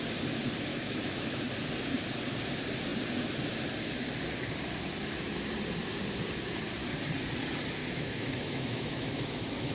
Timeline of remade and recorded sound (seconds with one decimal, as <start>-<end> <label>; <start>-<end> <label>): 0.0-0.7 recorded; 0.7-1.4 remade; 1.4-7.8 recorded; 7.8-9.7 remade